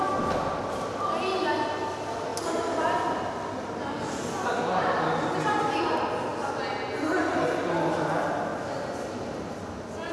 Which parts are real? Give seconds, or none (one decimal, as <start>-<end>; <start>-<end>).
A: 0.0-10.1